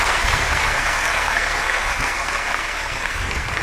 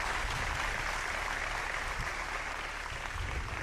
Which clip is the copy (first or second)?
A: first